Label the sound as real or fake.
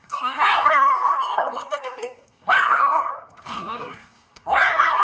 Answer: fake